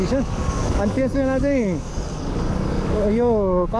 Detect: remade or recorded remade